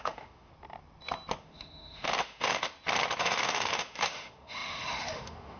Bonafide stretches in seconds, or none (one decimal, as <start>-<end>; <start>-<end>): 0.5-1.4; 2.7-3.2